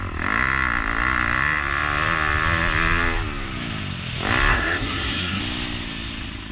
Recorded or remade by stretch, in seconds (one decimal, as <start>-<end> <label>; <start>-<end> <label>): 0.0-4.5 recorded; 4.5-5.4 remade; 5.4-6.5 recorded